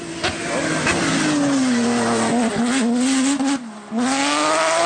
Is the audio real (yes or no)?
yes